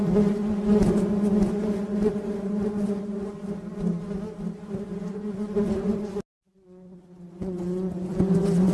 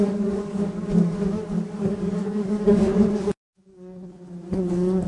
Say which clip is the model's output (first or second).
second